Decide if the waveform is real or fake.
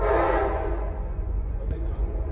fake